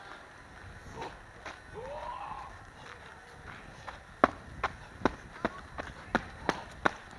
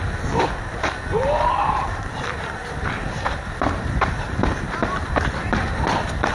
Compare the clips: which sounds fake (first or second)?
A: second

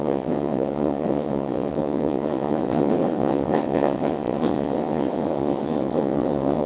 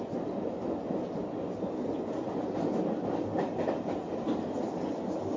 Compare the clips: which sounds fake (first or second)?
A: first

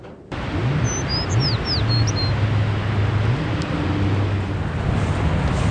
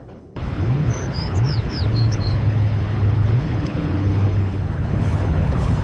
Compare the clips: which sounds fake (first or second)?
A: second